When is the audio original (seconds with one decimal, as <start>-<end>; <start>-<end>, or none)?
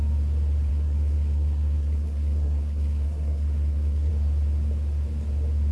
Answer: 0.0-0.7; 4.1-5.7